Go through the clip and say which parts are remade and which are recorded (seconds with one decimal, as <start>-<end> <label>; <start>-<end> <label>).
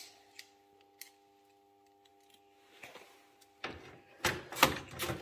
0.0-5.2 recorded